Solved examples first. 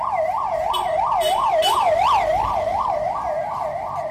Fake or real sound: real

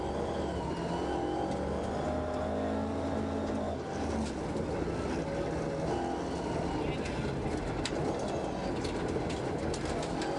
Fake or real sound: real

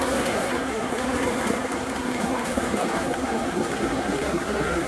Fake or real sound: fake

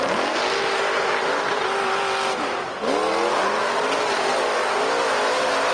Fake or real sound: real